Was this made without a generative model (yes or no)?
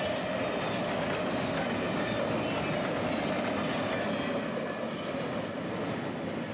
yes